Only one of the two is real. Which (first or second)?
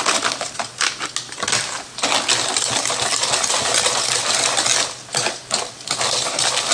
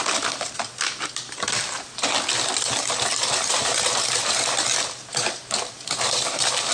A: first